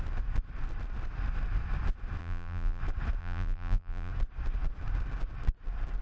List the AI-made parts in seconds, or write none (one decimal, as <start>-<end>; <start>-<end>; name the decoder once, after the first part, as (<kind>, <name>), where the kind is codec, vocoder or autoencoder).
2.2-2.8 (vocoder, BigVGAN v2); 3.2-4.1